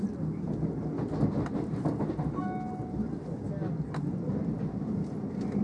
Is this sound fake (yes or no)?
no